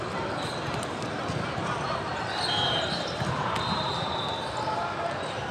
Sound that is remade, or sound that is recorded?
recorded